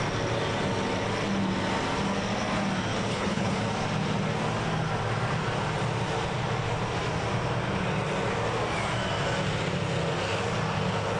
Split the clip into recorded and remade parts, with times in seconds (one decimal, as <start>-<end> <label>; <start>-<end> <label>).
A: 0.0-3.1 recorded; 3.1-3.6 remade; 3.6-11.2 recorded